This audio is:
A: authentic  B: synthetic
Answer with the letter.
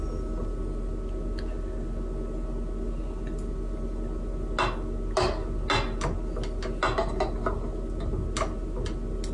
A